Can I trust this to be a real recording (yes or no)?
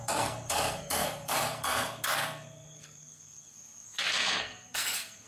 no